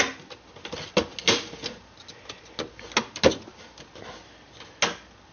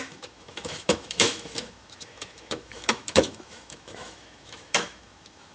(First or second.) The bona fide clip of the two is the first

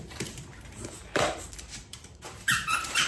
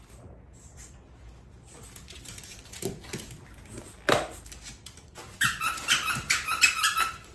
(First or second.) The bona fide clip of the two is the second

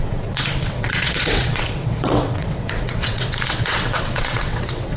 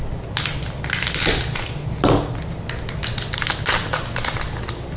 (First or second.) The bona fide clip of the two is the second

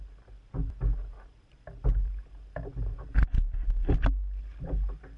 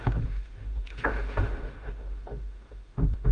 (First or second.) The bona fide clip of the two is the first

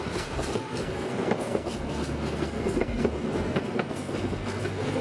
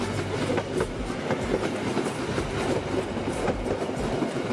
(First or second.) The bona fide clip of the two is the second